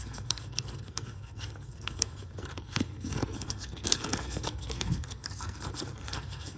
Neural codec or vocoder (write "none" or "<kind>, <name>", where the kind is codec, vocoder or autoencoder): codec, SNAC